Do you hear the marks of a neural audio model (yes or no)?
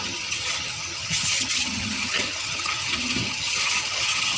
yes